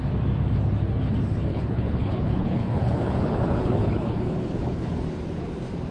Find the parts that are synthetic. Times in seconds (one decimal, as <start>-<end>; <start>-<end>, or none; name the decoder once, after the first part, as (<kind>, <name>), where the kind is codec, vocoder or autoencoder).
1.5-5.0 (codec, HILCodec)